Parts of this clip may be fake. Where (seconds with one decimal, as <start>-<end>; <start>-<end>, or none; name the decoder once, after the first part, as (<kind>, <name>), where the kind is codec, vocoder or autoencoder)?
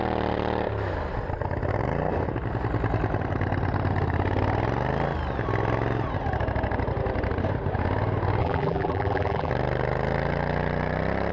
8.4-9.5 (vocoder, BigVGAN v2)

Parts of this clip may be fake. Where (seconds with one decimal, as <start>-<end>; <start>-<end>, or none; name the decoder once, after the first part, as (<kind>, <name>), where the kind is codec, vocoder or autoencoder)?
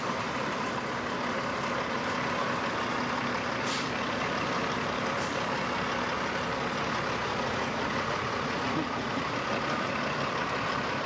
7.2-9.9 (vocoder, Vocos)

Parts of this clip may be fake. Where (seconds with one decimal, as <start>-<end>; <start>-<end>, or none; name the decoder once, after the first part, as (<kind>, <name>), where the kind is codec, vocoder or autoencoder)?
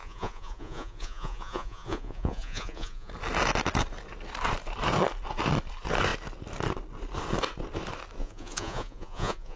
0.0-3.1 (vocoder, Vocos); 8.2-9.6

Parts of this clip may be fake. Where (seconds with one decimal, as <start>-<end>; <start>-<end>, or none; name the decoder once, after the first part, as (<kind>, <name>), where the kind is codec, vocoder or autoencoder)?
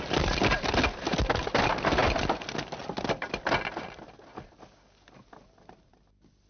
none